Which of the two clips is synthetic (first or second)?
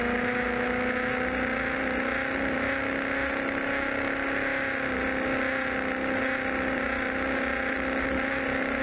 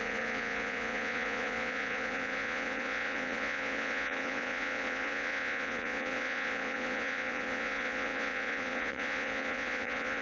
second